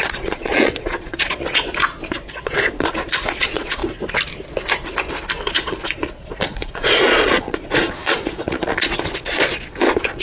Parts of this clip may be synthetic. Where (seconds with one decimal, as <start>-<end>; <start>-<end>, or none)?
0.0-1.6; 2.3-3.8; 5.5-10.2